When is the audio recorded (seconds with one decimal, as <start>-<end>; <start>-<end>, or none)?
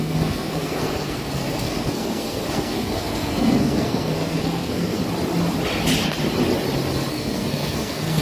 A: 5.0-7.1